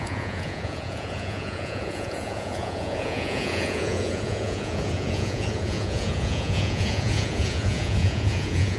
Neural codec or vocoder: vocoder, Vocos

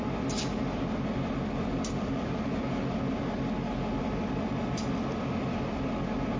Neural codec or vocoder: none